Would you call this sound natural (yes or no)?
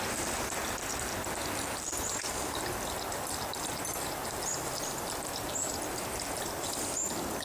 yes